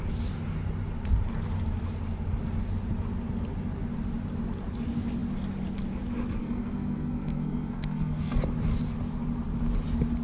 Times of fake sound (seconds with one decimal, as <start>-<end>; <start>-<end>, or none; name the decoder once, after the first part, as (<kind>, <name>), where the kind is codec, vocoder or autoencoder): 6.4-8.4 (codec, SNAC)